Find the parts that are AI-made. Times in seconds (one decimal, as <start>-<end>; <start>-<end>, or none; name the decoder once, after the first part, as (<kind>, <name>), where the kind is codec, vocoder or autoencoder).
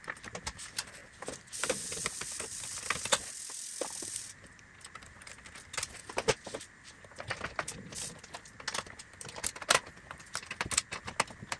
none